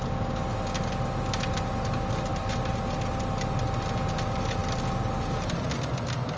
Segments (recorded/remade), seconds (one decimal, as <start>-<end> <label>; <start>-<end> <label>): 0.0-6.4 recorded